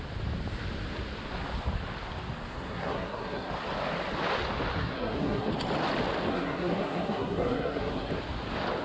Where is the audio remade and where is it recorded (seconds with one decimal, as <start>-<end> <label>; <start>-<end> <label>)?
0.0-2.5 recorded; 2.5-3.5 remade; 3.5-4.8 recorded; 4.8-5.5 remade; 5.5-6.3 recorded; 6.3-8.1 remade; 8.1-8.8 recorded